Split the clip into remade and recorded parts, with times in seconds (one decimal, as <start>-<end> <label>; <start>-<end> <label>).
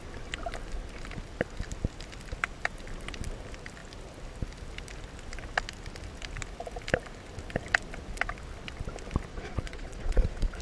0.0-9.3 recorded; 9.3-10.6 remade